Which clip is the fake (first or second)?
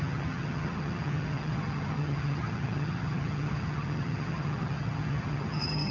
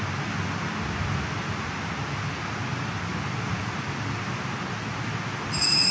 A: first